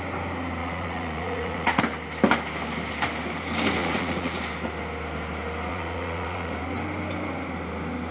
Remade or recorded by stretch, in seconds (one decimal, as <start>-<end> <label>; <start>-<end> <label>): 0.0-0.6 recorded; 0.6-1.8 remade; 1.8-3.8 recorded; 3.8-4.4 remade; 4.4-5.7 recorded; 5.7-6.5 remade; 6.5-8.1 recorded